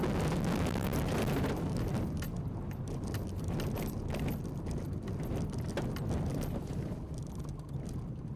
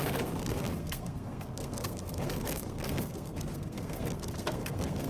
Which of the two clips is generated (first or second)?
second